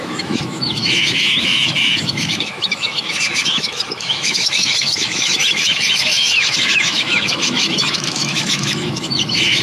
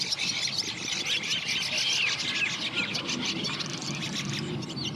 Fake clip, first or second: first